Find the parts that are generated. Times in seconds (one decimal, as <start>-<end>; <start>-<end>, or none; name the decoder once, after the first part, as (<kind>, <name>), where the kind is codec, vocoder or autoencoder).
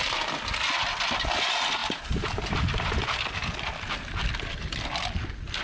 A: 1.8-3.0 (vocoder, BigVGAN v2)